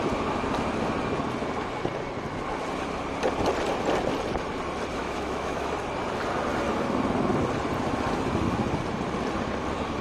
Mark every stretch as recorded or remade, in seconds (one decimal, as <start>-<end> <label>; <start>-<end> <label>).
0.0-5.0 recorded; 5.0-5.7 remade; 5.7-10.0 recorded